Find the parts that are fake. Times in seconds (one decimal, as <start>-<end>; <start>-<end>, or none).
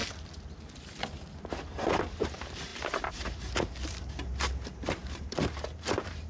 1.4-6.3